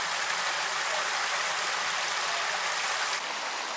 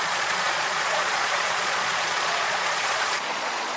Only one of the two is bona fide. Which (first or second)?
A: first